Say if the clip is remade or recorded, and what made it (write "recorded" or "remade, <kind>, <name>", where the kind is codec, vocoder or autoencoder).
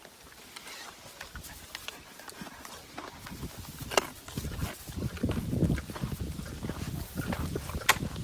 recorded